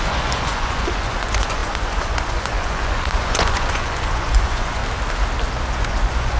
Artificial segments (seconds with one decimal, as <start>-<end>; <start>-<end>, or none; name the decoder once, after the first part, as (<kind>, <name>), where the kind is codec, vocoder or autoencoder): 0.0-4.8 (vocoder, Vocos); 5.6-6.4